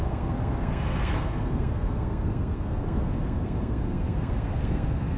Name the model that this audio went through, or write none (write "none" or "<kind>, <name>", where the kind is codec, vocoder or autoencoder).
codec, SNAC